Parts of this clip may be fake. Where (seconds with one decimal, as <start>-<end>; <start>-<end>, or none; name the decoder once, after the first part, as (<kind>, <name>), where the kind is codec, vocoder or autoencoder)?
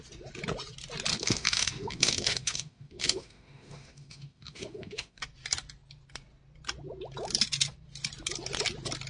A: 1.1-5.2 (autoencoder, DAC-VAE)